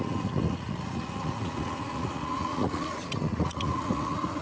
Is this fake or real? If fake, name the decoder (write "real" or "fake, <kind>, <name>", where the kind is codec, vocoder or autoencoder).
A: fake, vocoder, Vocos